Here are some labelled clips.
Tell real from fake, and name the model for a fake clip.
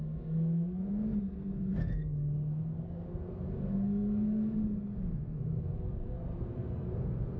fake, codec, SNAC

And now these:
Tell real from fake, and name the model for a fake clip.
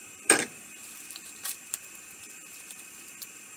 fake, vocoder, BigVGAN v2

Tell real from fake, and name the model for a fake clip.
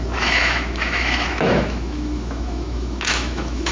fake, autoencoder, DAC-VAE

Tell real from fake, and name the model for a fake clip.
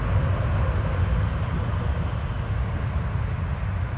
real